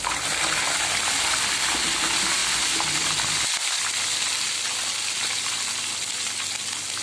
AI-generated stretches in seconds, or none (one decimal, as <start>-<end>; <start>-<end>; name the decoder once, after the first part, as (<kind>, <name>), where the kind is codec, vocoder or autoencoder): none